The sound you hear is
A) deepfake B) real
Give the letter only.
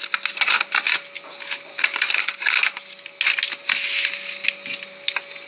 B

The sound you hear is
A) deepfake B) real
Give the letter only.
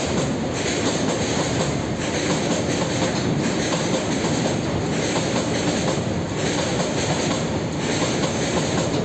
B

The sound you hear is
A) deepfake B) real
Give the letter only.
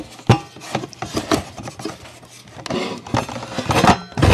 B